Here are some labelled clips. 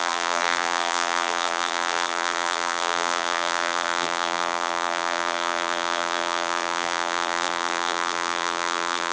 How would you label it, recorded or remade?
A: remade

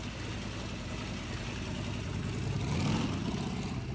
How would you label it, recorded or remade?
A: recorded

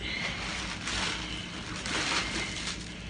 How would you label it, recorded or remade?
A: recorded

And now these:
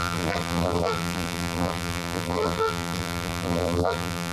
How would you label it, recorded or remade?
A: remade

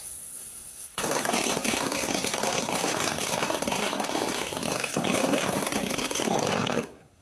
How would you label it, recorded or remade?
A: remade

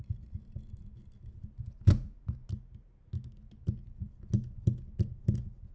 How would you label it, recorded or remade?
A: recorded